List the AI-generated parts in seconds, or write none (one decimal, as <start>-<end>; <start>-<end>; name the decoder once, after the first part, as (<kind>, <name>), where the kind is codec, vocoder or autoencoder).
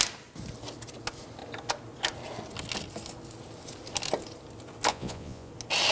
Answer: 4.9-5.5 (vocoder, Vocos)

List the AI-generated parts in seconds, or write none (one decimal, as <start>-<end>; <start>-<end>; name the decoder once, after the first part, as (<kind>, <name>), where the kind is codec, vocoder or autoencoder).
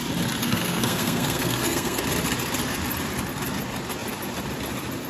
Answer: 0.4-2.0 (codec, SNAC)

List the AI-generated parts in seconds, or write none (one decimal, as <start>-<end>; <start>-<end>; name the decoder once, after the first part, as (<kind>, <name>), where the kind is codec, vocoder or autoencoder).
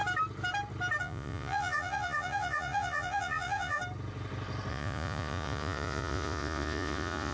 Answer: 1.0-3.8 (vocoder, Vocos); 4.7-7.3